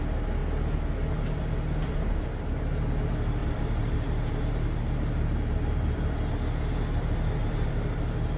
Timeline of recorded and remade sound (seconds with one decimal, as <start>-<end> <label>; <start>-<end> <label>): 0.0-3.4 recorded; 3.4-6.3 remade; 6.3-7.4 recorded; 7.4-7.9 remade; 7.9-8.4 recorded

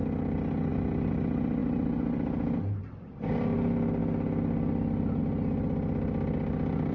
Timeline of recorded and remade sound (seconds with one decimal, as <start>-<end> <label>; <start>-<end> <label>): 0.0-6.9 recorded